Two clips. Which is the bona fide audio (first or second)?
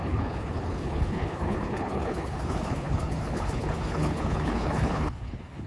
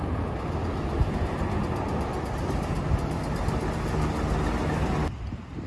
second